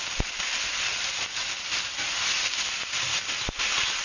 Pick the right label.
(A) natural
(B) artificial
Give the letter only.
A